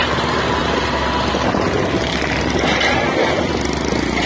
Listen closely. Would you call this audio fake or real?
real